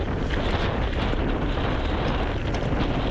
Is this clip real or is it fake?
real